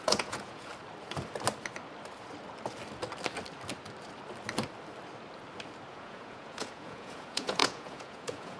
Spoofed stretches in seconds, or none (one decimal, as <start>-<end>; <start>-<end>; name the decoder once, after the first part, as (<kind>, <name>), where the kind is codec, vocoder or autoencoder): 0.0-0.7 (vocoder, Vocos); 5.9-8.6